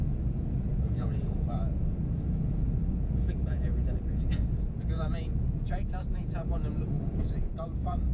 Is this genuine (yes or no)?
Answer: no